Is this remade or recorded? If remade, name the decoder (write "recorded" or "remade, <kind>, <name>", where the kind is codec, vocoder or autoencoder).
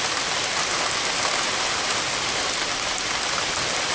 recorded